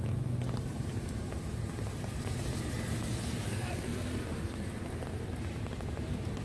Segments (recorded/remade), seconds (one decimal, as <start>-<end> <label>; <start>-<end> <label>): 0.0-6.4 recorded